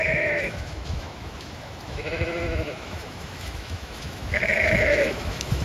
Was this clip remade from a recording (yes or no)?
yes